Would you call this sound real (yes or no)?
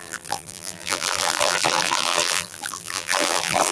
no